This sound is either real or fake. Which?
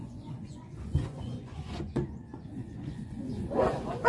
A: fake